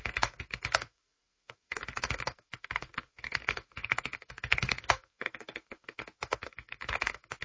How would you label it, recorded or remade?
remade